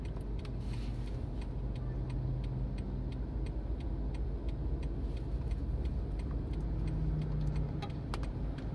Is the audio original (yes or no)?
yes